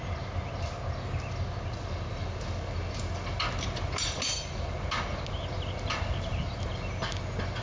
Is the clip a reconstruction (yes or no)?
no